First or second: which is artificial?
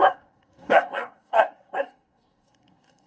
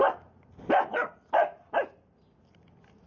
first